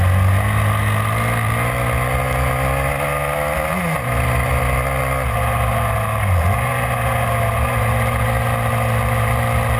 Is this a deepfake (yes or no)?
no